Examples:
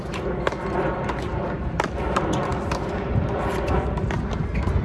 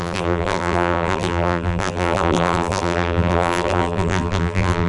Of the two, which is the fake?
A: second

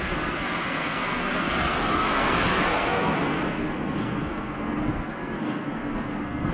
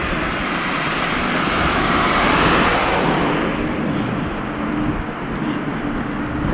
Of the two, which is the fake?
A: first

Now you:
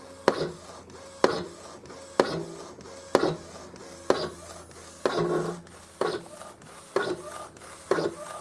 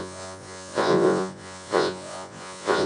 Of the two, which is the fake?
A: second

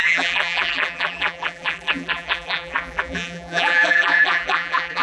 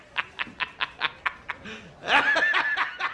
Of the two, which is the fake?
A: first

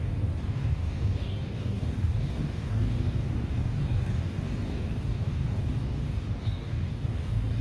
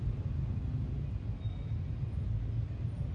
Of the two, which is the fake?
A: first